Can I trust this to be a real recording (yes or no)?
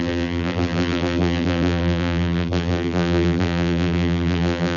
no